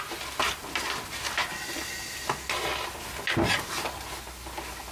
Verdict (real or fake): real